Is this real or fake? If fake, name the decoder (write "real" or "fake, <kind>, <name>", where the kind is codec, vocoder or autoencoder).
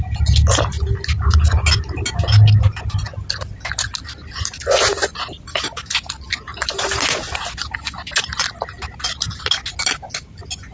real